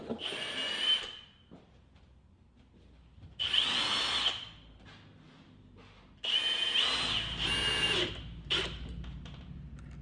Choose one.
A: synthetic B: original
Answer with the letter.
B